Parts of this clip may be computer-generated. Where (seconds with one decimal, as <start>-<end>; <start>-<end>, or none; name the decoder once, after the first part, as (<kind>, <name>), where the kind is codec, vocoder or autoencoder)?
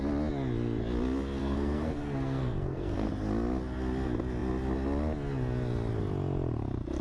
1.4-3.1 (codec, SNAC)